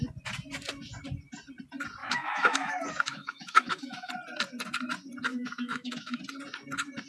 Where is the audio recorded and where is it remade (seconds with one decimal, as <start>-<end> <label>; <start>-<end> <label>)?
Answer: 0.0-2.0 recorded; 2.0-4.1 remade; 4.1-5.3 recorded; 5.3-6.2 remade; 6.2-7.1 recorded